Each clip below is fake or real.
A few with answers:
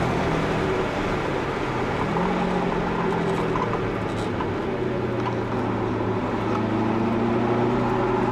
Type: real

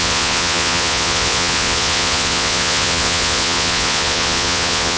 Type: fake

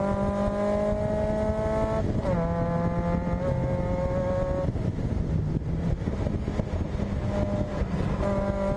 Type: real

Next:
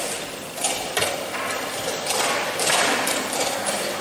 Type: fake